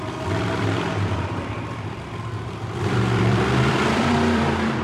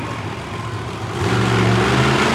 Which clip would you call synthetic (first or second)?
first